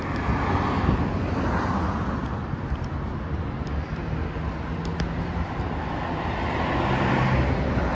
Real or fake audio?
real